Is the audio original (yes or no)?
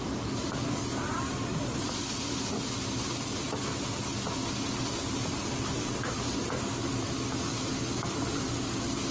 yes